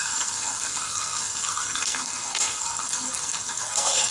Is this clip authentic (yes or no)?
no